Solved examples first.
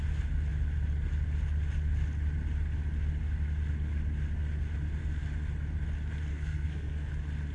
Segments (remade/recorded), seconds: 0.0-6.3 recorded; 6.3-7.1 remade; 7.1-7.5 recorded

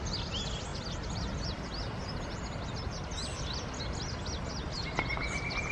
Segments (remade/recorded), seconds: 0.0-5.7 recorded

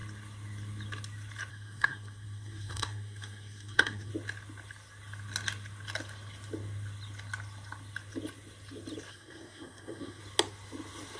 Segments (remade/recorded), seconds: 0.0-1.5 recorded; 1.5-4.1 remade; 4.1-9.1 recorded; 9.1-10.2 remade; 10.2-11.2 recorded

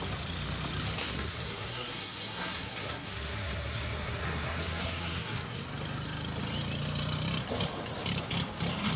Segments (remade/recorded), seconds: 0.0-1.0 recorded; 1.0-5.6 remade; 5.6-9.0 recorded